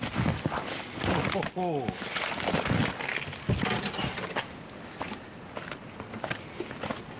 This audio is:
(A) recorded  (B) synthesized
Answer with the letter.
A